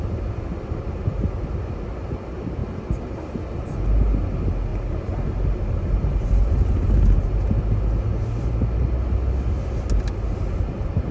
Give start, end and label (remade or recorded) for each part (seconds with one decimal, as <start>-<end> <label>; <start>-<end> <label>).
0.0-2.6 recorded; 2.6-3.2 remade; 3.2-4.7 recorded; 4.7-7.5 remade; 7.5-11.1 recorded